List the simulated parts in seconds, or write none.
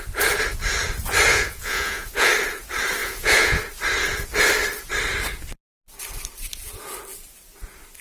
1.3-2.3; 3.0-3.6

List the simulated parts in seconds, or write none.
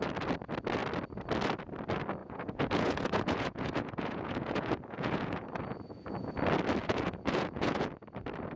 2.2-6.3; 6.8-7.9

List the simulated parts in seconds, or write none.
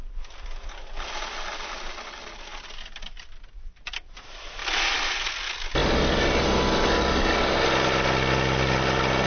none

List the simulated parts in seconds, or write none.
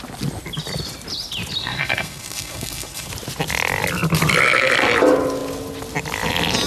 1.6-3.1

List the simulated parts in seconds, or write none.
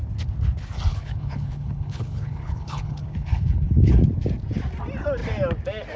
0.9-4.0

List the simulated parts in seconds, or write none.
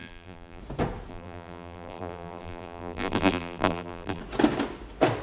0.0-0.6; 1.1-4.2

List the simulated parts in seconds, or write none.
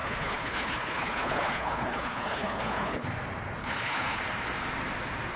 0.0-3.1; 3.6-4.2